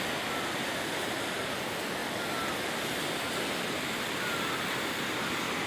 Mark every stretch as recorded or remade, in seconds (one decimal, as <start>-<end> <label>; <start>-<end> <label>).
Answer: 0.0-5.7 recorded